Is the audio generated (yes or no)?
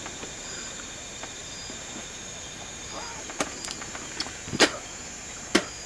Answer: yes